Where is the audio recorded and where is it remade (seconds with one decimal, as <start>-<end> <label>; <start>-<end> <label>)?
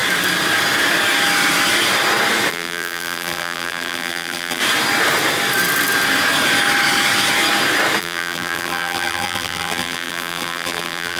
0.0-2.5 recorded; 2.5-4.6 remade; 4.6-8.0 recorded; 8.0-11.2 remade